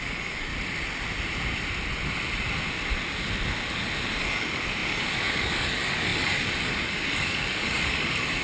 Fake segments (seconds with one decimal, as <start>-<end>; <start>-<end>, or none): 0.0-0.5; 4.2-8.4